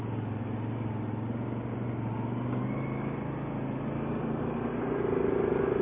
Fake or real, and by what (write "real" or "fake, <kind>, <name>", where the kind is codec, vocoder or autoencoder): real